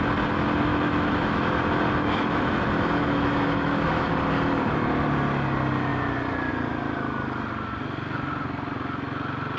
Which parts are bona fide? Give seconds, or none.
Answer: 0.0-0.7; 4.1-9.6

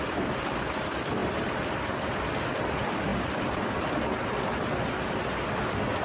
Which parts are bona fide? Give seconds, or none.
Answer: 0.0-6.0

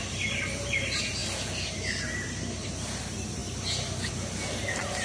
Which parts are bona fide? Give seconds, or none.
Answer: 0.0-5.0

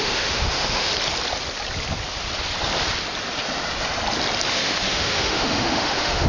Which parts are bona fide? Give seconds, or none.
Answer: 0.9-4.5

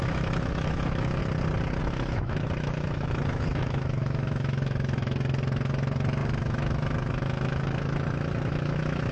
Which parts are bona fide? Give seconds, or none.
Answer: 1.2-1.8

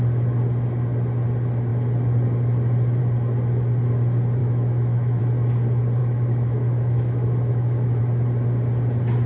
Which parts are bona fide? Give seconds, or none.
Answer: 0.0-4.4; 5.2-6.0; 8.0-9.3

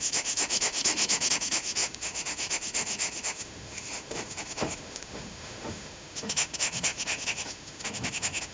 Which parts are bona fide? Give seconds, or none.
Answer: none